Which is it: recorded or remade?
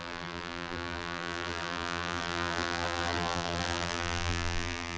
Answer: remade